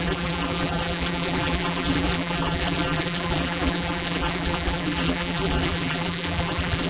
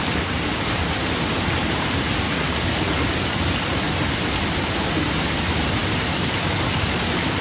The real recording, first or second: second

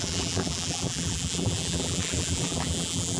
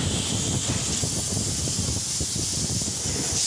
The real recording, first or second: second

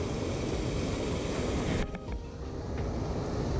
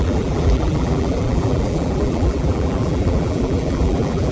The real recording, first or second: first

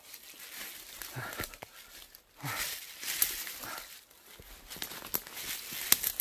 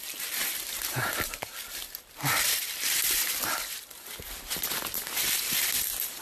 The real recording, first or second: first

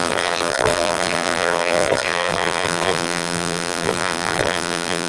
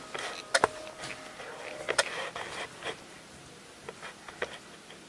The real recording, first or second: second